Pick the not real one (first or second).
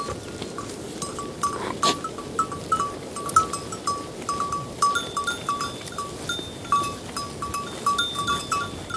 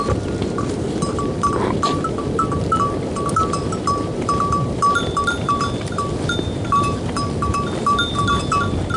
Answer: second